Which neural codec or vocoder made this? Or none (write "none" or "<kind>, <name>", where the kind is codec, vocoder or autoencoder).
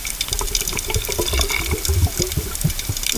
none